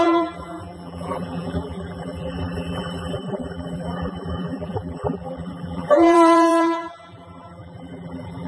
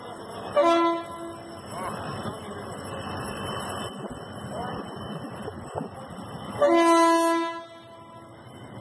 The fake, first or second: first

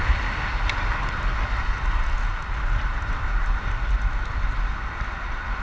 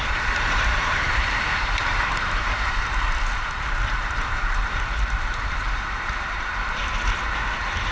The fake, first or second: second